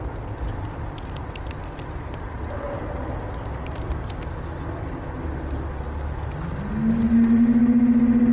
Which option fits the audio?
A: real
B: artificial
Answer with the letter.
A